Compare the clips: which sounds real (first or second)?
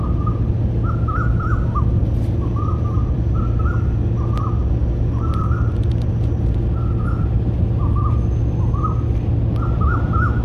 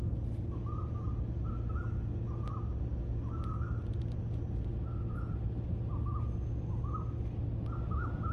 second